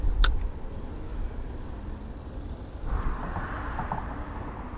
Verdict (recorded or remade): recorded